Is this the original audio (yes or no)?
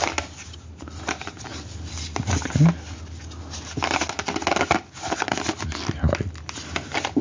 yes